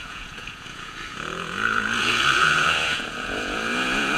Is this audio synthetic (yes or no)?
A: yes